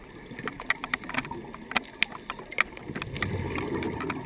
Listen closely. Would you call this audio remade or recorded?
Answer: recorded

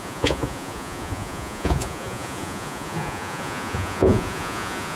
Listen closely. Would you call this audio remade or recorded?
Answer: remade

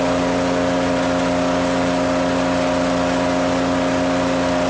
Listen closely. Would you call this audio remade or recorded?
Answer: recorded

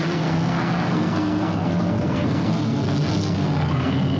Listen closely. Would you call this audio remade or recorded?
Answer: remade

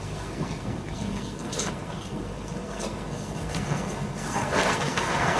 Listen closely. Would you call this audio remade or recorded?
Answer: remade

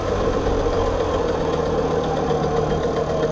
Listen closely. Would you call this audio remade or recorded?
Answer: recorded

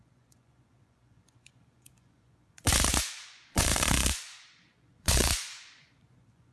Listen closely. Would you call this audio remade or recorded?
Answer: remade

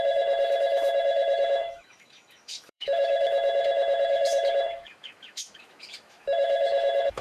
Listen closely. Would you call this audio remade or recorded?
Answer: remade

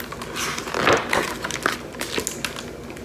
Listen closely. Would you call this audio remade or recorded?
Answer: recorded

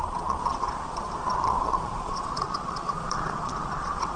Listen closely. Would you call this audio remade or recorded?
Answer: remade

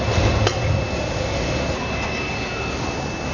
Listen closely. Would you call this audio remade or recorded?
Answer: recorded